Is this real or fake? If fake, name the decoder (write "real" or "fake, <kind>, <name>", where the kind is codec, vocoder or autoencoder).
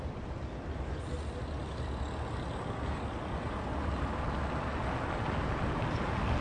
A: real